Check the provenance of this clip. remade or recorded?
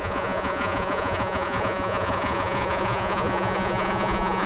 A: remade